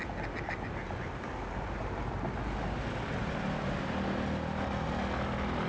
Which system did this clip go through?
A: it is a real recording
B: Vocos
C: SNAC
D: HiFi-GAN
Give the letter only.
A